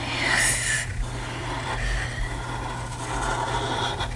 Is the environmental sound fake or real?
real